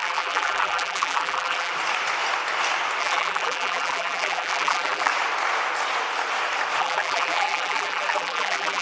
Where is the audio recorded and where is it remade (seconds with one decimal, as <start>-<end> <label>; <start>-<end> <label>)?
0.0-1.7 remade; 1.7-3.0 recorded; 3.0-5.1 remade; 5.1-6.8 recorded; 6.8-8.8 remade